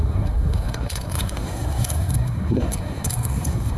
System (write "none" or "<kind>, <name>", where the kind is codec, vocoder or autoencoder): codec, SNAC